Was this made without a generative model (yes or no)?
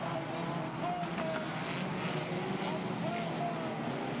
yes